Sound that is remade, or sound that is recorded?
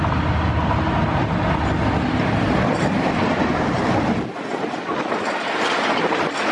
recorded